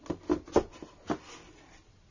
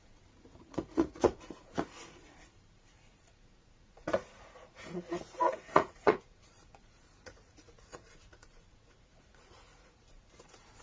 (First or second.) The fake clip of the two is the second